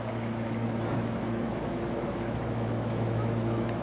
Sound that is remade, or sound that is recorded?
remade